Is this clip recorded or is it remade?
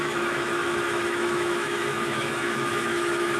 remade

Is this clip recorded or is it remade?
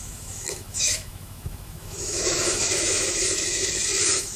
remade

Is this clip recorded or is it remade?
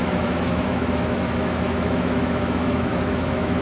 remade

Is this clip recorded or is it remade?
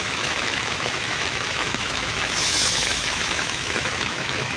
remade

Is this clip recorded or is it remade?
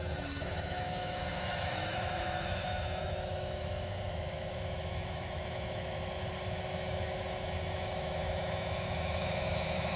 remade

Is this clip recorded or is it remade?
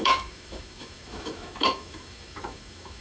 remade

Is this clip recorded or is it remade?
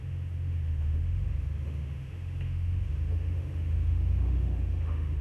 remade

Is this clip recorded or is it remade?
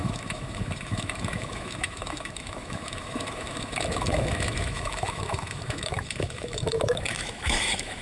remade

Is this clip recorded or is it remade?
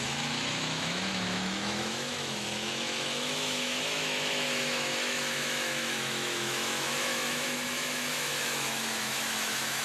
remade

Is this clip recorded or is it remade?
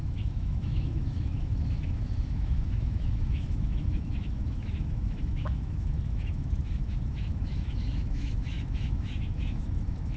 remade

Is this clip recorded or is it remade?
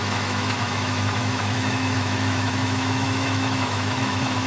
remade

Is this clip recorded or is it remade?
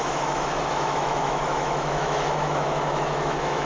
remade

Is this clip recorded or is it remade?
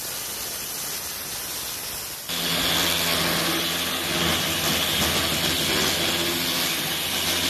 recorded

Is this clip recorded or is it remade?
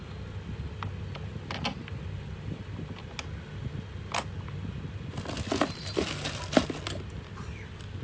recorded